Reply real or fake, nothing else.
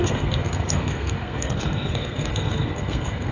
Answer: fake